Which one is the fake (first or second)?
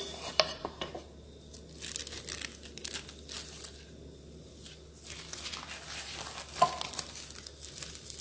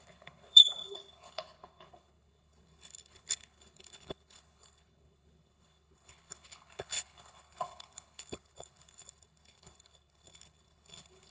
second